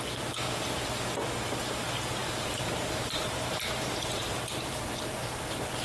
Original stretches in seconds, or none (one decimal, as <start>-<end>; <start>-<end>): 0.0-2.2; 4.8-5.8